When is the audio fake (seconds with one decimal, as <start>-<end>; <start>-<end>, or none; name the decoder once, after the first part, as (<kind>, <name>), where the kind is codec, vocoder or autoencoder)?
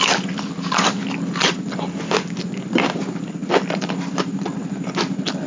none